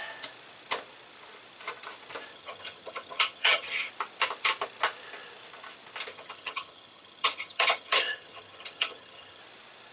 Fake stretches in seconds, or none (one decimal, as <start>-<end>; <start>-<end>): 2.3-3.9; 6.1-9.4